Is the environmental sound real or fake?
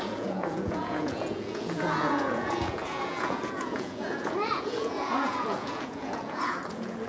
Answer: fake